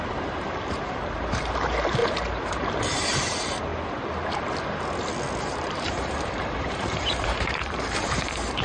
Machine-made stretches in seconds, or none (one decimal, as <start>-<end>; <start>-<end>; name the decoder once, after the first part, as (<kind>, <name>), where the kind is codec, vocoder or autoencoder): 0.0-3.7 (vocoder, BigVGAN v2); 5.4-8.6